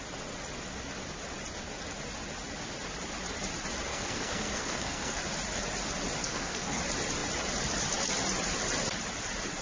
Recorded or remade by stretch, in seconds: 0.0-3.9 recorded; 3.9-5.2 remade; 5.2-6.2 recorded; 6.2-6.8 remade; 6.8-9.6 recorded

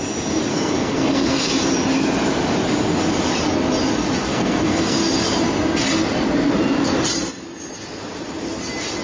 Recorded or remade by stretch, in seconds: 0.0-0.5 recorded; 0.5-1.5 remade; 1.5-4.3 recorded; 4.3-5.0 remade; 5.0-9.0 recorded

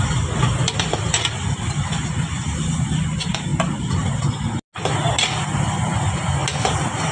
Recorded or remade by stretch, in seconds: 0.0-7.1 recorded

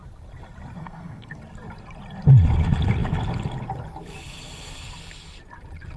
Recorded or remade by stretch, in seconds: 0.0-0.8 recorded; 0.8-1.4 remade; 1.4-6.0 recorded

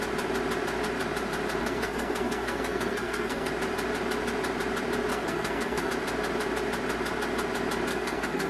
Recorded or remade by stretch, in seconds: 0.0-1.6 recorded; 1.6-3.5 remade; 3.5-5.1 recorded; 5.1-5.9 remade; 5.9-7.9 recorded; 7.9-8.5 remade